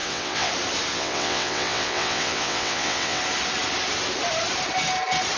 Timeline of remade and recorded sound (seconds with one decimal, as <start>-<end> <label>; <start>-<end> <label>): 0.0-0.5 remade; 0.5-0.9 recorded; 0.9-3.2 remade; 3.2-5.4 recorded